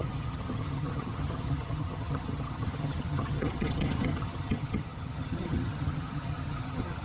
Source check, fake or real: fake